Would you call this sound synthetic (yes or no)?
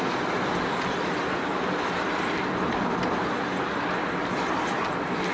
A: no